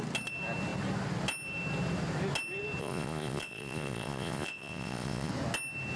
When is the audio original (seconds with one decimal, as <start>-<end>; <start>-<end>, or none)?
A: 0.0-2.8; 5.3-6.0